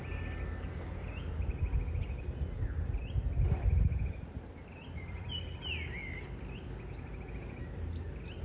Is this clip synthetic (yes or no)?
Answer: no